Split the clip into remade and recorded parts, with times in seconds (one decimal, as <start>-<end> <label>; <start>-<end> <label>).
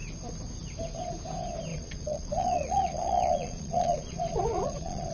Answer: 0.0-1.7 recorded; 1.7-5.1 remade